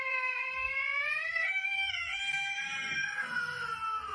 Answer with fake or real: real